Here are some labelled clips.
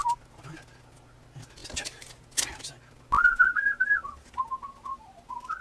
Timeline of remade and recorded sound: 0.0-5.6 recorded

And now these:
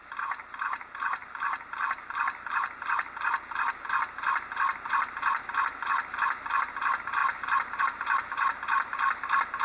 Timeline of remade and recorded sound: 0.0-9.6 recorded

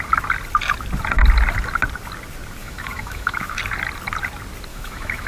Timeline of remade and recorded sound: 0.0-2.6 recorded; 2.6-3.6 remade; 3.6-4.7 recorded; 4.7-5.3 remade

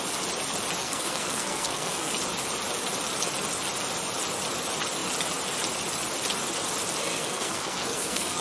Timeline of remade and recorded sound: 0.0-0.8 recorded; 0.8-2.1 remade; 2.1-7.0 recorded; 7.0-8.4 remade

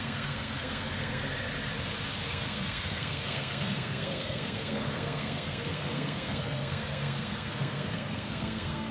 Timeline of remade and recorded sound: 0.0-1.2 remade; 1.2-2.3 recorded; 2.3-8.9 remade

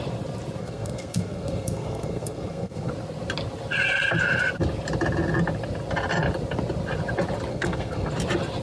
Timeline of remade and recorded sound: 0.0-0.6 recorded; 0.6-2.9 remade; 2.9-7.5 recorded; 7.5-8.1 remade; 8.1-8.6 recorded

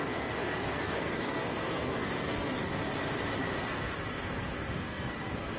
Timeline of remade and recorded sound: 0.0-2.7 remade; 2.7-3.6 recorded; 3.6-5.6 remade